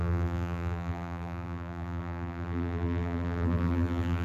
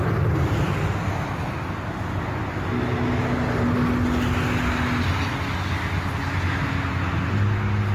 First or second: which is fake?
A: first